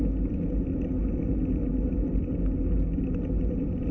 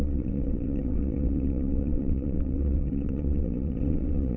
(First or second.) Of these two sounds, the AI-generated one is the second